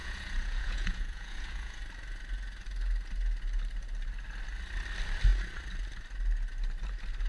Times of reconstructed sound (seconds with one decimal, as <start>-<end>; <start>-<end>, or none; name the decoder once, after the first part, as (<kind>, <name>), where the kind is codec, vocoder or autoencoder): 0.0-1.8 (vocoder, Vocos)